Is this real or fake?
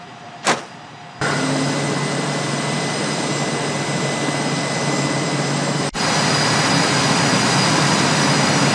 real